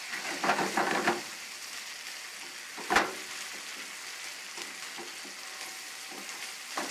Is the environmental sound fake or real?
real